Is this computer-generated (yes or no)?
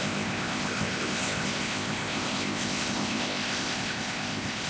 yes